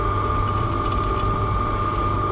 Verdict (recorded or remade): recorded